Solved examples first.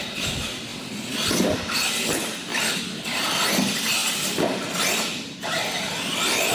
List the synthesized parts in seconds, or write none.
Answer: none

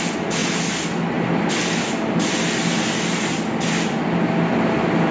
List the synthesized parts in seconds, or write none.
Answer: none

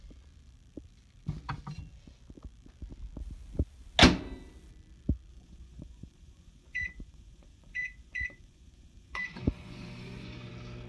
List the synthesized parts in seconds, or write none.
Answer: 5.3-10.5 (vocoder, Vocos)

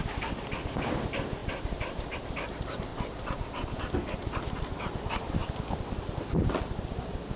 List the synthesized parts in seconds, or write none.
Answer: 1.4-2.3 (vocoder, BigVGAN v2); 2.9-3.8

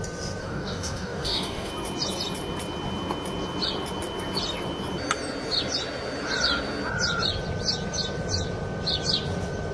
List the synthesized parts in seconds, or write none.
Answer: 0.4-1.7 (codec, DAC)